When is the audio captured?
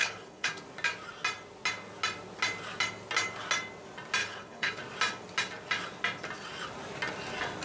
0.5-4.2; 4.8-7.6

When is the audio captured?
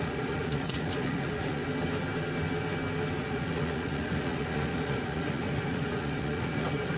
1.6-3.2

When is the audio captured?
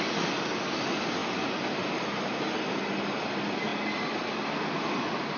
0.0-5.4